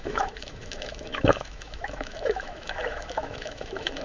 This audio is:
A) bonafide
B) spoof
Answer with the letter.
B